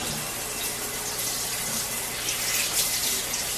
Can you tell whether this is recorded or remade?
recorded